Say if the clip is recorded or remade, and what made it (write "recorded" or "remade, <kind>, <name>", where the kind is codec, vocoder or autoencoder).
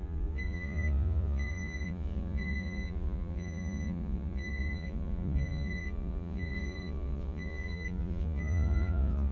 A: remade, vocoder, Vocos